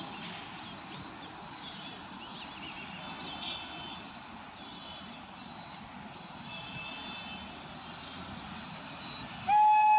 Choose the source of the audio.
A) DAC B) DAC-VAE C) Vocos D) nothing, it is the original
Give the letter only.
D